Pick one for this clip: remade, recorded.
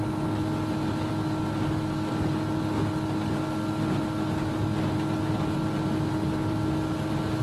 recorded